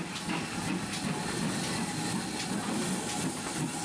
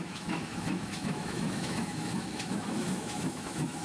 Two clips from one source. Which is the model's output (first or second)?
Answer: second